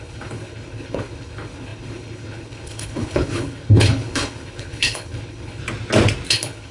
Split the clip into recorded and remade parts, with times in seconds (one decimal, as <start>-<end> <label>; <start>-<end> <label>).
0.0-5.6 remade; 5.6-6.3 recorded; 6.3-6.7 remade